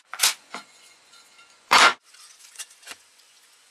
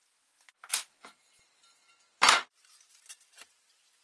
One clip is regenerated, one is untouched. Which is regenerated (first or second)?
first